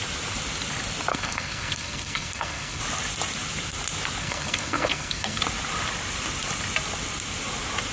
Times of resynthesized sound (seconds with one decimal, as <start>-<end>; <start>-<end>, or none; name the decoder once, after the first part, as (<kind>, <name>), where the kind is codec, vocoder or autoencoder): 1.1-2.8 (codec, SNAC); 4.2-5.4